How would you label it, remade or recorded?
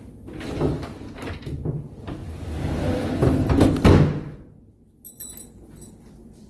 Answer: recorded